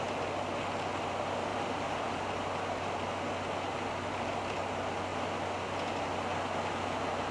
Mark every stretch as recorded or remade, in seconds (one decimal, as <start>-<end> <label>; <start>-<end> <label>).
0.0-1.5 recorded; 1.5-2.2 remade; 2.2-7.3 recorded